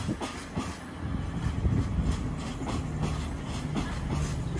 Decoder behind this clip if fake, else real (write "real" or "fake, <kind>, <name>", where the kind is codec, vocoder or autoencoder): real